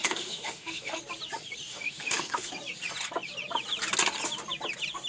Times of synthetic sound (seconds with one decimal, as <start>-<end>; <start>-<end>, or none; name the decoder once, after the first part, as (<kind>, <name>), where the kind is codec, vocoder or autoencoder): 0.0-1.0 (autoencoder, DAC-VAE); 1.7-2.5